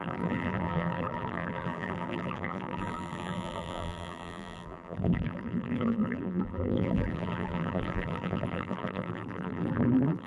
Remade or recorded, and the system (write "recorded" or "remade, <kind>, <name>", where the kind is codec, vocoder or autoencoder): remade, vocoder, BigVGAN v2